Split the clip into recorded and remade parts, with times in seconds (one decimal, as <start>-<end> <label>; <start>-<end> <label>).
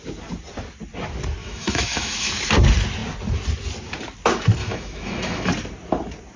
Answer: 0.0-1.4 recorded; 1.4-2.3 remade; 2.3-4.6 recorded; 4.6-5.5 remade; 5.5-6.4 recorded